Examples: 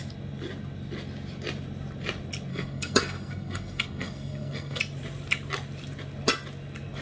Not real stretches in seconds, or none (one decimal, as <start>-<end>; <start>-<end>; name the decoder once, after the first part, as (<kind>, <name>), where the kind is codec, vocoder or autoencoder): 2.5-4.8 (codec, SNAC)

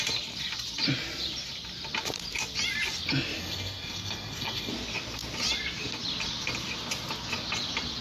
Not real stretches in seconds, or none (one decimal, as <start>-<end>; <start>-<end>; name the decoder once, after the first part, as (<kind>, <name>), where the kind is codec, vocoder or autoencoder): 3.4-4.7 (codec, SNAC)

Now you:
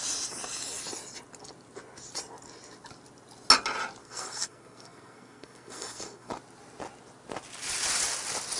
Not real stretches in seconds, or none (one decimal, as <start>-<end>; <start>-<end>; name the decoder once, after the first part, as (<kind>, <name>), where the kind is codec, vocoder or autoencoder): 4.0-6.3 (codec, SNAC)

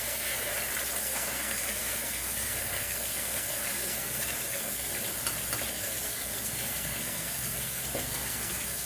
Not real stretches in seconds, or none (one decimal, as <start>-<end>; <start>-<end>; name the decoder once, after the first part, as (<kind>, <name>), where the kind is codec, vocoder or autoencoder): 0.0-0.5 (codec, SNAC); 1.0-4.9; 5.7-8.9

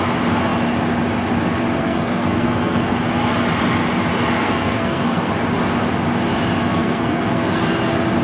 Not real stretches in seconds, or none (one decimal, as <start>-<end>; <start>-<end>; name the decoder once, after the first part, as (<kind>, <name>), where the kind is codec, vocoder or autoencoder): 1.8-3.0 (codec, SNAC); 4.4-5.3; 6.7-7.6

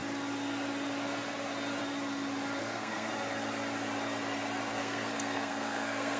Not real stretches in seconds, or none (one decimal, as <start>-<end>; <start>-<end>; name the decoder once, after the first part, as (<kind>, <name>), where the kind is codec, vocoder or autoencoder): 2.6-3.1 (codec, SNAC); 4.8-6.2

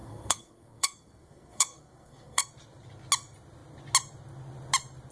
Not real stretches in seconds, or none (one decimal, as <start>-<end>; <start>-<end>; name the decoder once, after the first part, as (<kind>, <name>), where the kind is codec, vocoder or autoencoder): 0.0-2.5 (codec, SNAC)

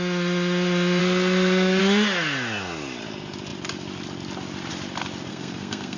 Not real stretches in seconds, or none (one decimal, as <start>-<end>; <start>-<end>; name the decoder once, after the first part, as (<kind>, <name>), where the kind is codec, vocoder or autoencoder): 1.0-1.8 (codec, SNAC); 5.3-6.0